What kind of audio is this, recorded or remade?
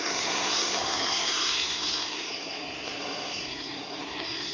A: remade